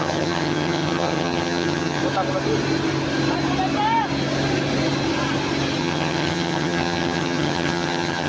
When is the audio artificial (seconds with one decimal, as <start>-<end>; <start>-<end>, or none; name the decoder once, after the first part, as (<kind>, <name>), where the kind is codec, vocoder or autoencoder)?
0.0-2.0 (vocoder, HiFi-GAN); 5.8-8.3